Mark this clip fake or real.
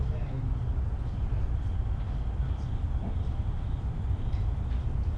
real